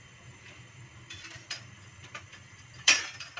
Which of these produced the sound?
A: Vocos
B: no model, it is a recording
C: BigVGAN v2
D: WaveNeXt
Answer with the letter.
C